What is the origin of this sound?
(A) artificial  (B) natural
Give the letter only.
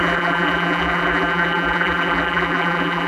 A